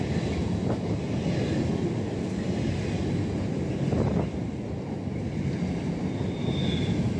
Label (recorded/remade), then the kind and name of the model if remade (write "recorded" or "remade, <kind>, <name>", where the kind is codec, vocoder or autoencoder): recorded